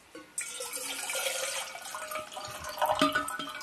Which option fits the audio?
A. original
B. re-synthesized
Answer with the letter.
A